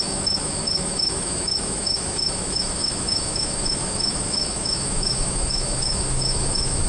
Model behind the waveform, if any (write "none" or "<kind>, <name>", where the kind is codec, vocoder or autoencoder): autoencoder, DAC-VAE